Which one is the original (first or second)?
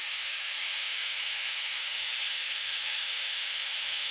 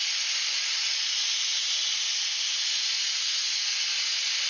second